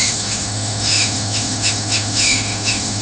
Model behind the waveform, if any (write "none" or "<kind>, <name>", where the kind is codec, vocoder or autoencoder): autoencoder, DAC-VAE